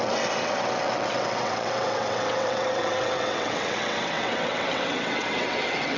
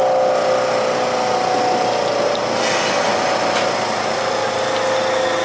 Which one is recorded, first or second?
second